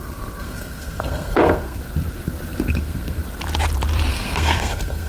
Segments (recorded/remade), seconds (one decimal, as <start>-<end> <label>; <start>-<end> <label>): 0.0-1.8 remade; 1.8-2.7 recorded; 2.7-3.2 remade; 3.2-4.1 recorded; 4.1-5.1 remade